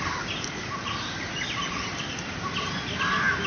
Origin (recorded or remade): recorded